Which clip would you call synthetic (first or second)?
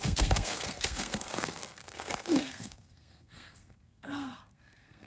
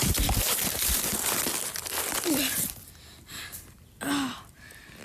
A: first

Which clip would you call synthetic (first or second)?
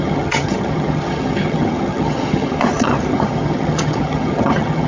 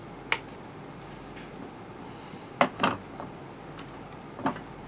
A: first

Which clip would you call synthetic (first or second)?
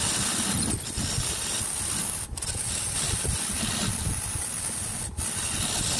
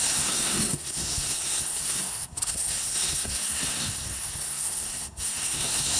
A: second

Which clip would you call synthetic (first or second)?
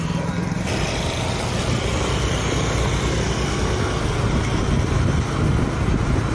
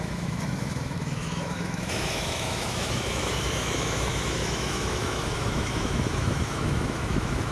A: second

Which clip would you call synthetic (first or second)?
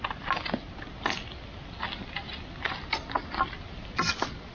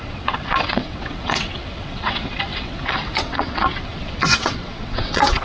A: second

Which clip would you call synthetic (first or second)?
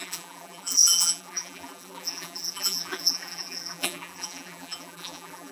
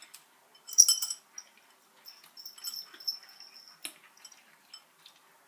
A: first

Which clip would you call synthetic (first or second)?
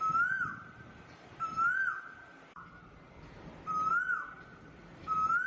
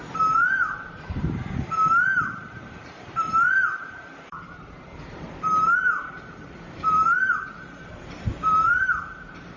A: second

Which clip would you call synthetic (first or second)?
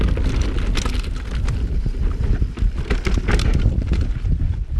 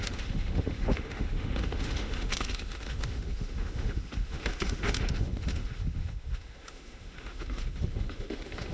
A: second